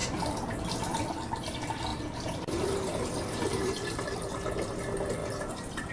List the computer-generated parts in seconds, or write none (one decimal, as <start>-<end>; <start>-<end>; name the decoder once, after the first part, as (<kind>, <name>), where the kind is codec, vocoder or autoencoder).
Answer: 1.9-4.0 (vocoder, BigVGAN v2); 5.2-5.9